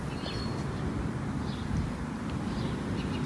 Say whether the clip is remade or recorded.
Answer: recorded